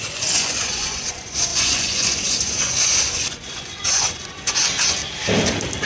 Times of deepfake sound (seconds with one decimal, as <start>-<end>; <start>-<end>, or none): 0.0-5.0